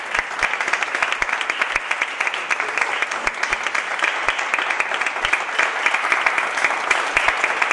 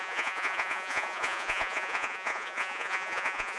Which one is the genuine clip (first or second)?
first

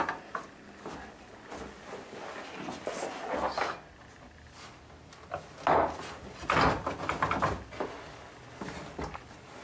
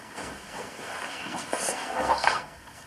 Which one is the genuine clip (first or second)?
first